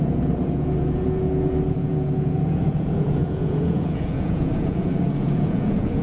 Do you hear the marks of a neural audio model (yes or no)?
yes